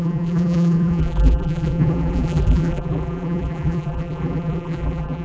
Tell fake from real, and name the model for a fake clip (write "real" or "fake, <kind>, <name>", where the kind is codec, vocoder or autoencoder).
fake, vocoder, BigVGAN v2